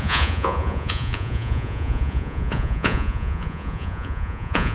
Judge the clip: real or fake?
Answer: fake